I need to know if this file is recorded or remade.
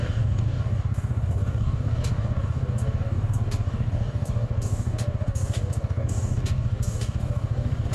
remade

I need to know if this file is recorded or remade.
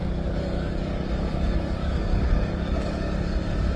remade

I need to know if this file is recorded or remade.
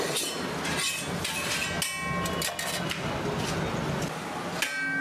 recorded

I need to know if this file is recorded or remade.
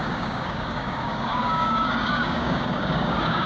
remade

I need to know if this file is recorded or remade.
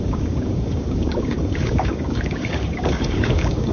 remade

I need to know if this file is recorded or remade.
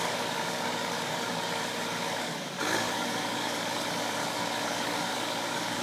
remade